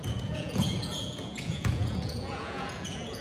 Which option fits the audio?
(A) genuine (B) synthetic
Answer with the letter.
B